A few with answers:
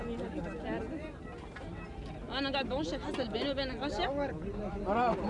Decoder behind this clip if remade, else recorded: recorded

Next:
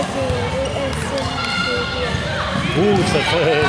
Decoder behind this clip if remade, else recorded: recorded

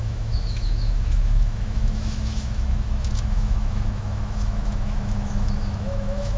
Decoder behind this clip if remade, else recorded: remade, autoencoder, DAC-VAE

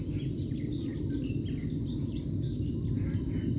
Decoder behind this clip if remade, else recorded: recorded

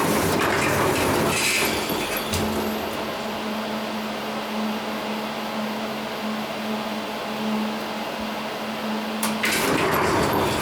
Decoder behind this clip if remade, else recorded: recorded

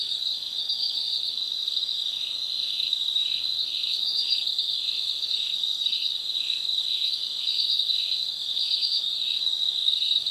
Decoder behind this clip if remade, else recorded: remade, codec, SNAC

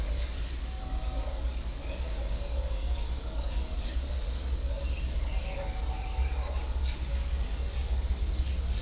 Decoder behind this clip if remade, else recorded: remade, codec, DAC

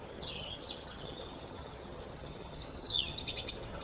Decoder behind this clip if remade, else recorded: remade, vocoder, HiFi-GAN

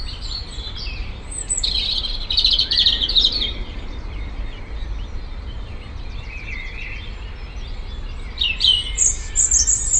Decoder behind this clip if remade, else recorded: remade, vocoder, BigVGAN v2